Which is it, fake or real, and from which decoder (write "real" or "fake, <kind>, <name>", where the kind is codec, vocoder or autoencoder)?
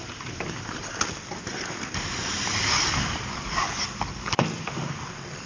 real